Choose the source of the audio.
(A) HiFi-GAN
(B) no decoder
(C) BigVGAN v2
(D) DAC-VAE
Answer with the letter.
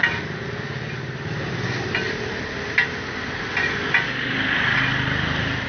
B